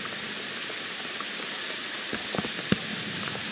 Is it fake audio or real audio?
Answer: fake